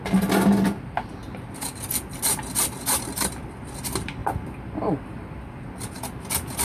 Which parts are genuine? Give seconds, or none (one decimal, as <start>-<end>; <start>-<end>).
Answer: 0.0-6.6